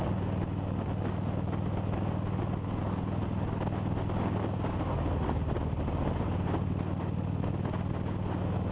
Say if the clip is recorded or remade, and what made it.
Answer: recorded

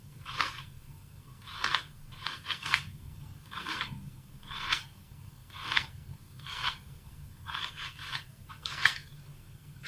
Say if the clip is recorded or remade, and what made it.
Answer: remade, codec, SNAC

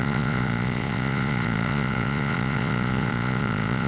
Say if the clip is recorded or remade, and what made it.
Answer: remade, vocoder, Vocos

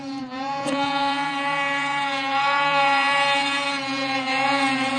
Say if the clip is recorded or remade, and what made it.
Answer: remade, vocoder, Vocos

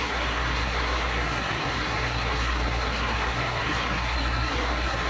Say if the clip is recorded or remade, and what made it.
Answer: remade, codec, SNAC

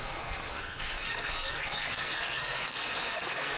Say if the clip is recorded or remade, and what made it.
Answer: remade, codec, SNAC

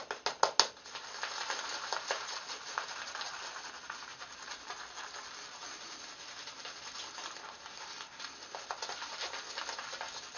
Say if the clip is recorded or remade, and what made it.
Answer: recorded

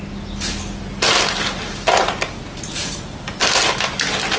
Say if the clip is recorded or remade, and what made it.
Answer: recorded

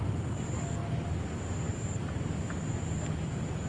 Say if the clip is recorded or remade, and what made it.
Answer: recorded